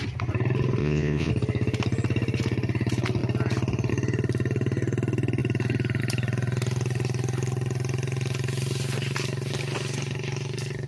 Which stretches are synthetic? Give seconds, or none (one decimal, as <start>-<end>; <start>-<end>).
0.8-1.3